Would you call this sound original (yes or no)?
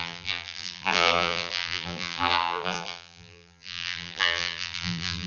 no